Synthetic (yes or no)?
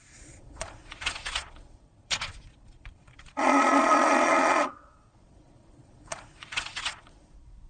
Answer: yes